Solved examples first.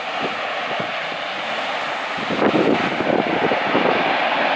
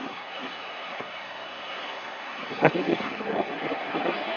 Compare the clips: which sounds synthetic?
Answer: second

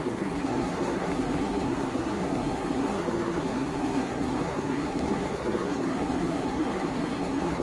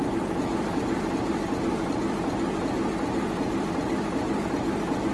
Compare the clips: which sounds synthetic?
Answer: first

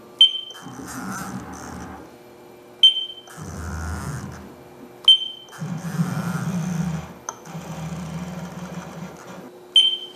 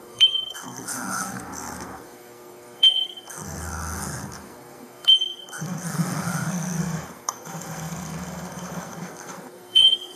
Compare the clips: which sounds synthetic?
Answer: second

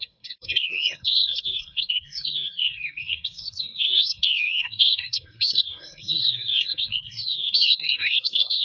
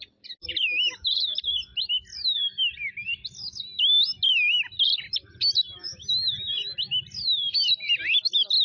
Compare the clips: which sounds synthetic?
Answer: first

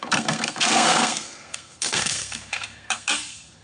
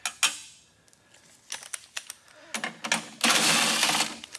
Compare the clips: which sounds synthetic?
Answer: first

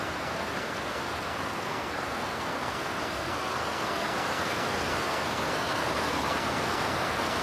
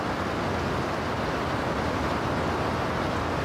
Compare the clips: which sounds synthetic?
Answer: first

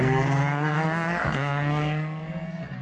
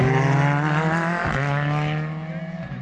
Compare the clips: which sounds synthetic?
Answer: first